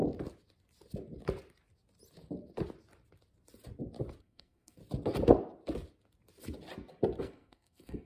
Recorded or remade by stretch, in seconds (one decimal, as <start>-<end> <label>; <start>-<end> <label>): 0.0-4.2 recorded; 4.2-4.8 remade; 4.8-7.2 recorded; 7.2-8.1 remade